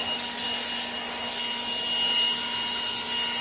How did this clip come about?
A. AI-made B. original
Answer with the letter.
B